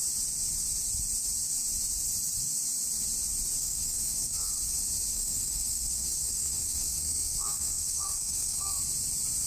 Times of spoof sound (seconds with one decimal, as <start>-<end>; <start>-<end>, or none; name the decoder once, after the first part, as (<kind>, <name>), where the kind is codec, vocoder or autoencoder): 3.6-4.5 (codec, SNAC); 5.1-8.8